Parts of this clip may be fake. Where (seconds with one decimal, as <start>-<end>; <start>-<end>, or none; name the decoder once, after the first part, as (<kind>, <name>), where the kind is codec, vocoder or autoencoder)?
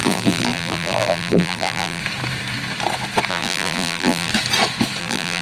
0.0-2.0 (vocoder, BigVGAN v2); 3.3-4.3; 5.0-5.4